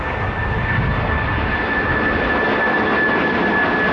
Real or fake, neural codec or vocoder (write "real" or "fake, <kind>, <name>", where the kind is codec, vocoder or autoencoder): real